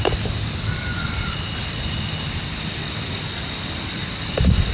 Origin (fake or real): real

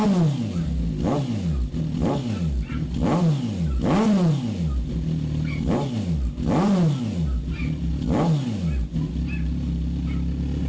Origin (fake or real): real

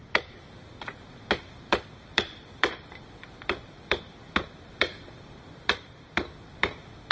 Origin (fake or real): fake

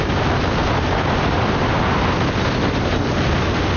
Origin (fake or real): real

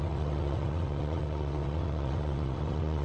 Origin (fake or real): fake